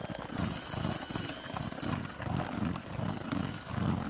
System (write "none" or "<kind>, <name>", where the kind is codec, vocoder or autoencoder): none